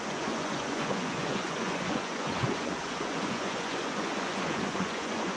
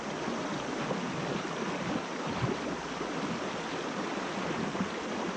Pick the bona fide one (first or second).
second